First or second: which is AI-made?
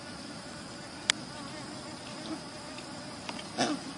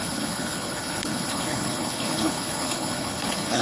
second